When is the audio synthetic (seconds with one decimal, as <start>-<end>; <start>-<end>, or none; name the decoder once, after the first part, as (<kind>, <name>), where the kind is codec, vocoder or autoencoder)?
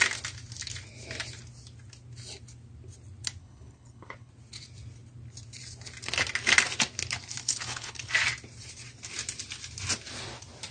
3.4-4.3 (codec, HILCodec); 7.4-8.1